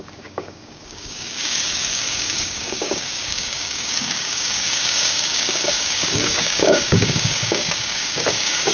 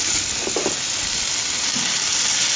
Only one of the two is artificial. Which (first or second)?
first